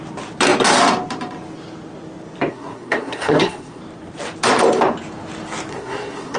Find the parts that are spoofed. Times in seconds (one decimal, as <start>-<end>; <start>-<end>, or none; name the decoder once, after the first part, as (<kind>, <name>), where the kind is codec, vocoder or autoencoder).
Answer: 2.5-3.8 (codec, SNAC); 5.7-6.4

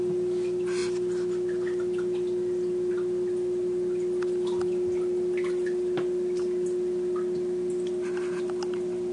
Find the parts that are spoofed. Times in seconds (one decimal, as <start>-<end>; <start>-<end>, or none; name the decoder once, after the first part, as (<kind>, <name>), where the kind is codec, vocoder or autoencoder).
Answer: none